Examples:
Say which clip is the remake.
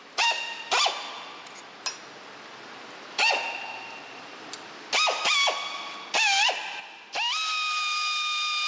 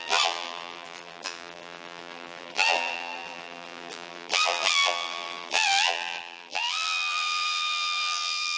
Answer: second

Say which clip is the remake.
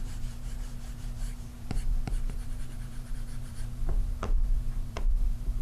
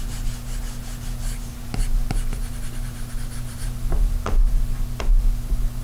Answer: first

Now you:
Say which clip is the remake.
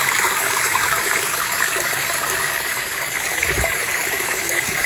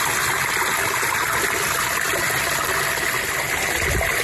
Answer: first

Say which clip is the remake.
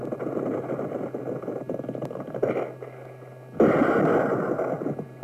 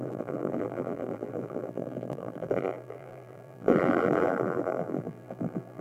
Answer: second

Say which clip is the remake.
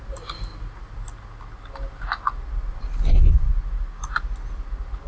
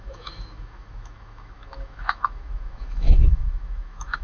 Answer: second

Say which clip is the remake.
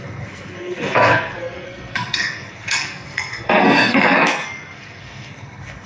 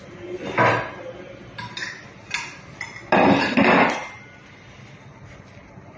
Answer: first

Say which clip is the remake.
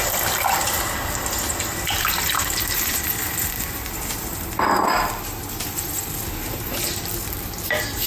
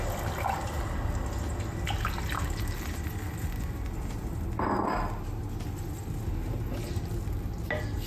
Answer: first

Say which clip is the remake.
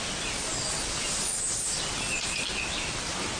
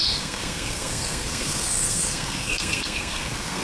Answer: second